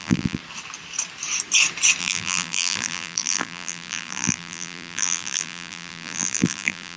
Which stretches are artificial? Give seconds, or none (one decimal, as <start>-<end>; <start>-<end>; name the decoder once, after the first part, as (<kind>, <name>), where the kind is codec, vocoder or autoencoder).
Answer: 0.0-0.4 (vocoder, BigVGAN v2); 2.0-7.0